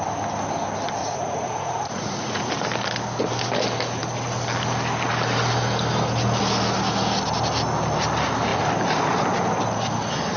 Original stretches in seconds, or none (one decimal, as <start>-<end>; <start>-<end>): 0.0-1.0; 2.5-10.4